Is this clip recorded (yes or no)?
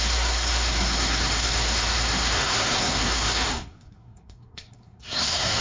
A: no